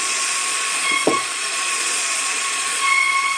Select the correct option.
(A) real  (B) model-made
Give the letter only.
B